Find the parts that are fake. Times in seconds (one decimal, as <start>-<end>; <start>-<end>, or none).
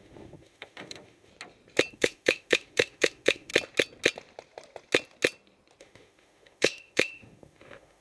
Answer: 0.0-1.3; 1.9-3.5; 5.8-8.0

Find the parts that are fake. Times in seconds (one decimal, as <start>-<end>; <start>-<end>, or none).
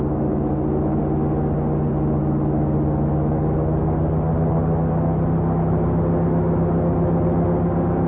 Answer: none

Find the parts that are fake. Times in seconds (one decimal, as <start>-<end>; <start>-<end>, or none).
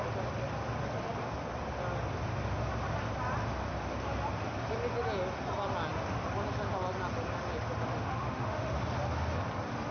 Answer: 7.9-8.7